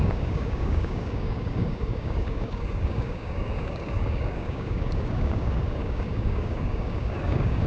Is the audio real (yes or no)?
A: no